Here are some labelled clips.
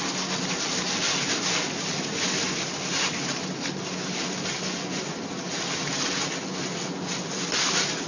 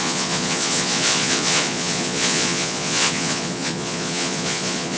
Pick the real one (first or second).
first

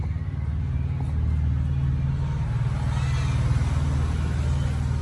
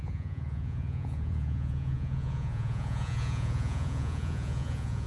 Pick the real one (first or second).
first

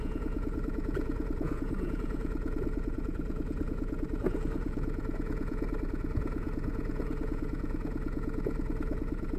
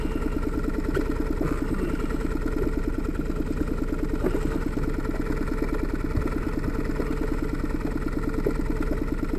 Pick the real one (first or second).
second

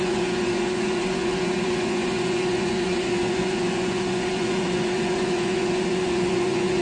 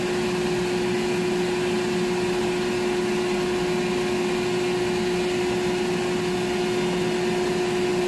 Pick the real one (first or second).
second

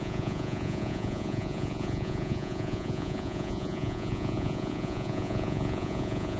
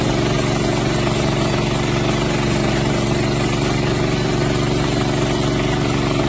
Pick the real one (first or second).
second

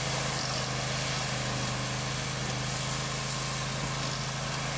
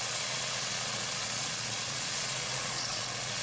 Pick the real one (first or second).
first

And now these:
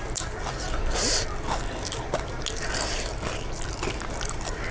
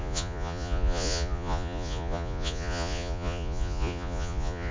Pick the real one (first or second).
first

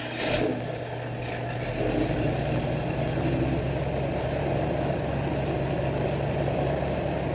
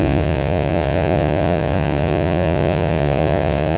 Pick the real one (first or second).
first